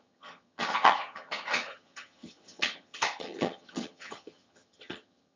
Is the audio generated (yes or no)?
yes